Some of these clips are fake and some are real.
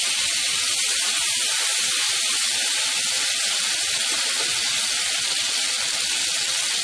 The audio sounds real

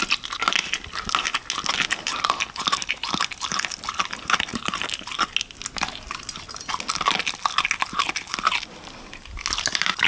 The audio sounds real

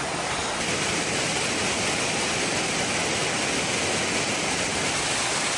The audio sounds real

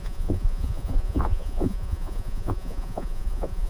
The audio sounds fake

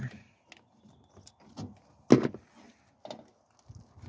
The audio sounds real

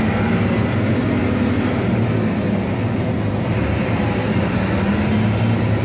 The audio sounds real